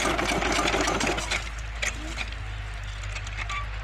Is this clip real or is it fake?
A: real